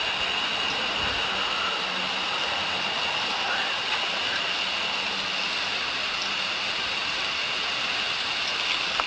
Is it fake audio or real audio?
real